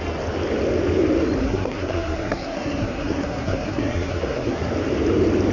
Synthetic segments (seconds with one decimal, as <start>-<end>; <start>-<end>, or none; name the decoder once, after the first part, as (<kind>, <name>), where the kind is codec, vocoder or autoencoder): 1.4-4.7 (codec, SNAC)